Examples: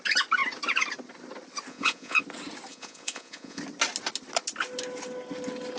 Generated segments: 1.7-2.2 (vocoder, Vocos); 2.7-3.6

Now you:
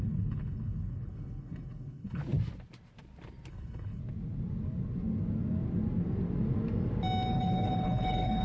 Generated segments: 0.0-2.2 (codec, HILCodec); 3.5-4.0; 7.3-8.4